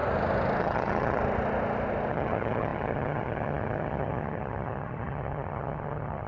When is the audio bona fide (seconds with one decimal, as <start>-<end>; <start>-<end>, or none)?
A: 0.0-0.6; 1.2-2.1